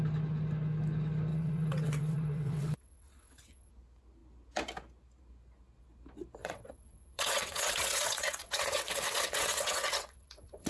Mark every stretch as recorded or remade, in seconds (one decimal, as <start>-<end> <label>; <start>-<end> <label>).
0.0-1.3 recorded; 1.3-3.7 remade; 3.7-6.4 recorded; 6.4-10.7 remade